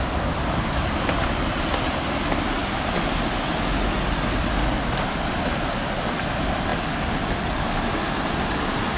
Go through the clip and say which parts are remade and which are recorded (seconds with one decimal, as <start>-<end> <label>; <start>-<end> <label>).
0.0-9.0 recorded